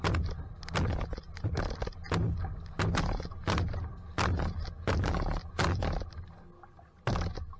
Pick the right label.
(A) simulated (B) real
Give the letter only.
B